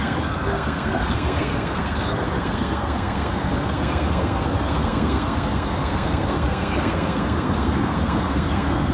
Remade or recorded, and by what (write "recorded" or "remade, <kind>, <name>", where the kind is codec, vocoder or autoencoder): remade, codec, SNAC